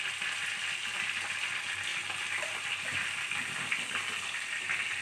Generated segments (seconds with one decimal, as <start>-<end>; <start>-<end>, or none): 1.9-4.6